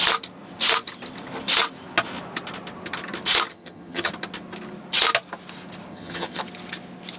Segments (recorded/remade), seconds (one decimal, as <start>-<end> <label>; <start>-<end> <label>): 0.0-3.5 recorded; 3.5-4.1 remade; 4.1-5.9 recorded; 5.9-6.4 remade; 6.4-7.2 recorded